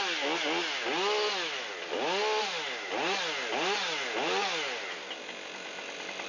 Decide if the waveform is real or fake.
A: real